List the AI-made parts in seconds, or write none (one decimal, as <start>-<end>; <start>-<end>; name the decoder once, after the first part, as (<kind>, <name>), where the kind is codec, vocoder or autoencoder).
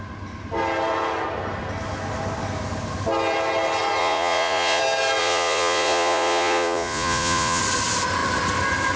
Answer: 4.0-4.8 (vocoder, Vocos); 5.2-7.6